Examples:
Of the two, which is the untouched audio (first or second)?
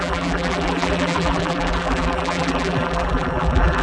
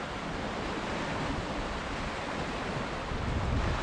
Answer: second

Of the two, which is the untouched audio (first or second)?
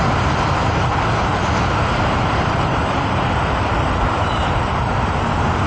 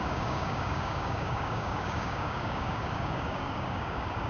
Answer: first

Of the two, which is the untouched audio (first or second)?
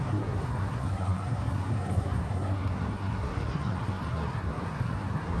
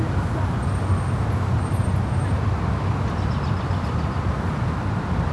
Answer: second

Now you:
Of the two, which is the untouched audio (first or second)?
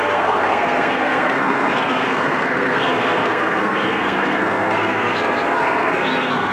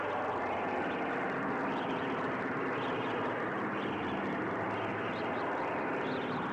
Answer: second